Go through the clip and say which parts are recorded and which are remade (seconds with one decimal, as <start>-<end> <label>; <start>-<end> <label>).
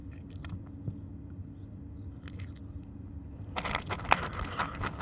0.0-5.0 recorded